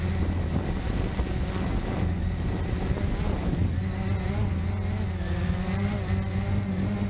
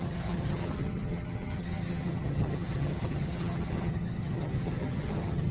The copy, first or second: second